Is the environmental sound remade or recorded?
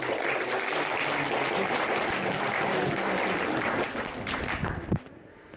recorded